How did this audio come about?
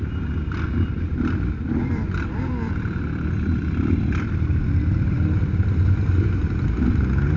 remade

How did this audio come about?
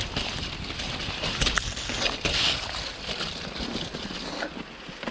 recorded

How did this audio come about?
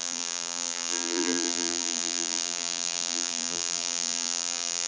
remade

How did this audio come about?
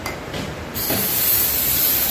remade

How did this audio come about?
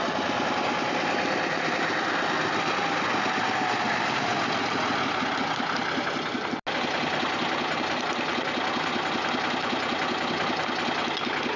recorded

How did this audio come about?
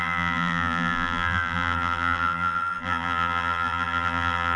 remade